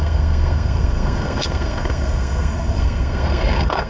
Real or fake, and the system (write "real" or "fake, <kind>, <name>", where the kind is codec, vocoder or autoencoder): fake, codec, SNAC